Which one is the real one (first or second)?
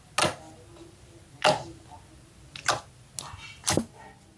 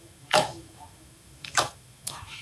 first